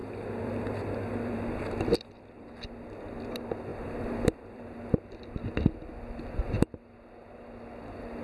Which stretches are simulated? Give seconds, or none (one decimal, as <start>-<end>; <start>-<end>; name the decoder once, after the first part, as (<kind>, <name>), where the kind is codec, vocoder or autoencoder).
0.0-2.5 (vocoder, BigVGAN v2); 3.7-4.6